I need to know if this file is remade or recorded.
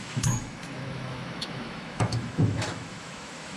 remade